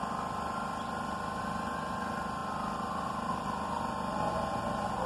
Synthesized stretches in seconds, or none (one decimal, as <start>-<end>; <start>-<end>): none